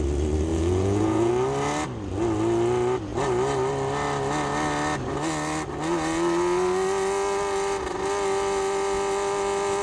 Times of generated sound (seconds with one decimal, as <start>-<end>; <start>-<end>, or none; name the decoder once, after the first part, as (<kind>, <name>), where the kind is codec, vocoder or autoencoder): 0.5-1.3 (vocoder, Vocos)